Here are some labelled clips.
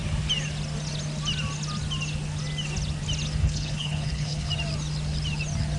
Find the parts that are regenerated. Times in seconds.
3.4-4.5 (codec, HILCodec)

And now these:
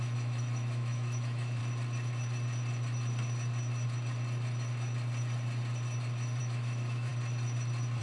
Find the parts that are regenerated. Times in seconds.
0.0-1.6 (autoencoder, DAC-VAE); 6.4-7.1

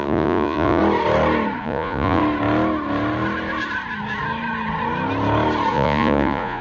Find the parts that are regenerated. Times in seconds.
0.0-0.8 (vocoder, Vocos); 1.6-2.2; 5.7-6.6

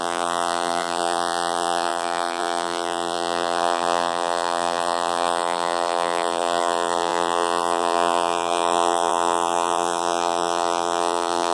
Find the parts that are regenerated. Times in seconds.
0.0-11.5 (vocoder, BigVGAN v2)

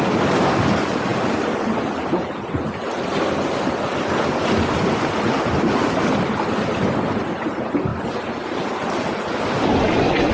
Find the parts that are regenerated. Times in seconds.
none

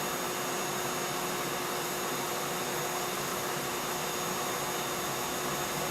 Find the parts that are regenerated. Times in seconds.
3.3-3.8 (vocoder, BigVGAN v2)